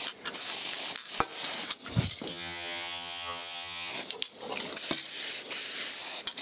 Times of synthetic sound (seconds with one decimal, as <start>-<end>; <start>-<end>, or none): 2.3-3.9